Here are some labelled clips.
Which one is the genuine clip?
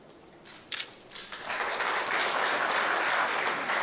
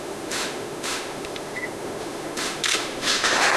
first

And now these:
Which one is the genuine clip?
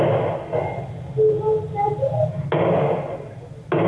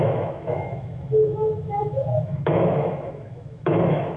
first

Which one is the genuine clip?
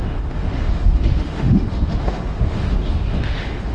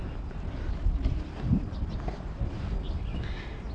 second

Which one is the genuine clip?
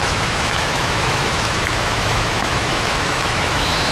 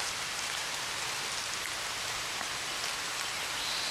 second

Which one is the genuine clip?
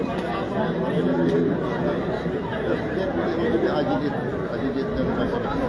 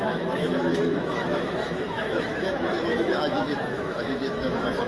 first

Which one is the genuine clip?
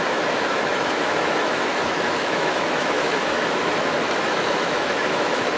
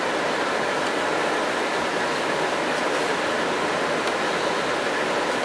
second